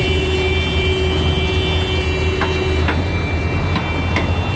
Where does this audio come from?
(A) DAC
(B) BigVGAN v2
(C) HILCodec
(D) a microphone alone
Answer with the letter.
D